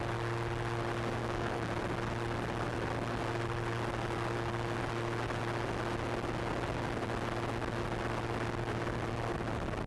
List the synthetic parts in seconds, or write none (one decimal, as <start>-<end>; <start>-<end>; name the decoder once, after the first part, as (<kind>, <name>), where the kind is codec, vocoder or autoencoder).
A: 1.2-1.7 (codec, DAC)